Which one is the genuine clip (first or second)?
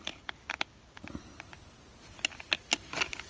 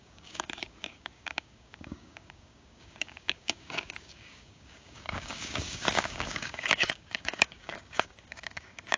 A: first